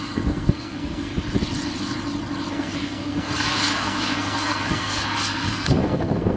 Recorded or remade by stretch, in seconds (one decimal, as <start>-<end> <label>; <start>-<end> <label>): 0.0-1.1 remade; 1.1-2.5 recorded; 2.5-6.4 remade